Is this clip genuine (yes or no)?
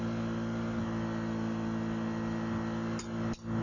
yes